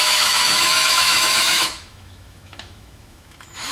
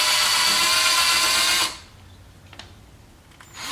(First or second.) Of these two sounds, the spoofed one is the first